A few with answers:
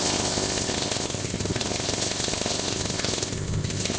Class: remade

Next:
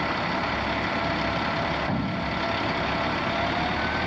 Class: recorded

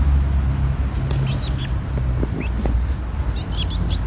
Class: recorded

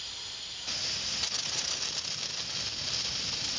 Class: recorded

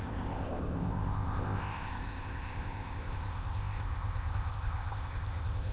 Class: remade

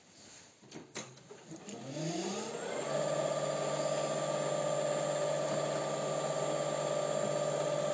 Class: recorded